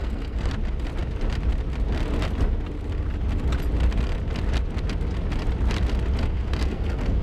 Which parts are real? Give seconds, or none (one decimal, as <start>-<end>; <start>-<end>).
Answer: 0.5-6.2